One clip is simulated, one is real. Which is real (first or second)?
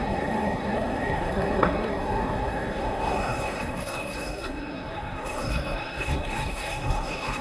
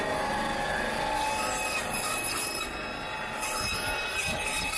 second